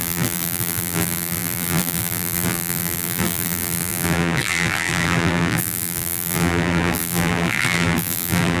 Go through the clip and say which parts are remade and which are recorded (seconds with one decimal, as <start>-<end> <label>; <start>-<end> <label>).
0.0-8.6 remade